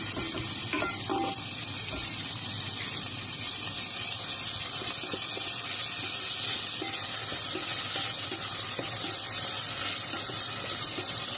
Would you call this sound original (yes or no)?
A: yes